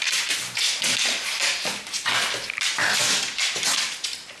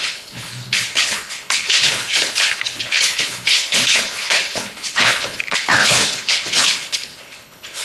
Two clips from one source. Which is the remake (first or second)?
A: second